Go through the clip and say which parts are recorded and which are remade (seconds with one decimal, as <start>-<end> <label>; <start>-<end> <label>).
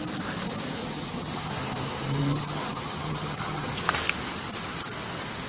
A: 0.0-0.8 recorded; 0.8-1.5 remade; 1.5-2.2 recorded; 2.2-3.8 remade; 3.8-5.5 recorded